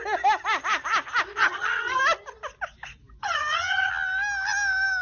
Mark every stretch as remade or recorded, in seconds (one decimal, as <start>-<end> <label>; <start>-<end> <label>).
0.0-1.4 recorded; 1.4-2.0 remade; 2.0-3.2 recorded; 3.2-3.9 remade; 3.9-5.0 recorded